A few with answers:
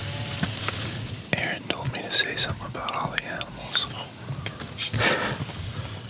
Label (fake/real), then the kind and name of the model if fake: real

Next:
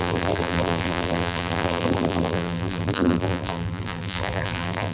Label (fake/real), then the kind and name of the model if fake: fake, vocoder, BigVGAN v2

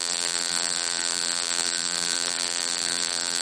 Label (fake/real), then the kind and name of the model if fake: fake, vocoder, BigVGAN v2